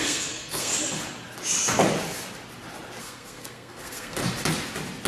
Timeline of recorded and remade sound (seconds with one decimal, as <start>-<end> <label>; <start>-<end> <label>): 0.0-0.7 remade; 0.7-3.0 recorded; 3.0-4.2 remade; 4.2-5.1 recorded